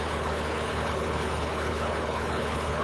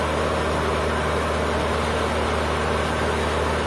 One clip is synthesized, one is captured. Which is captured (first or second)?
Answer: second